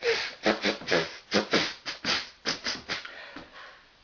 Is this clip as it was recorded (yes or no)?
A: yes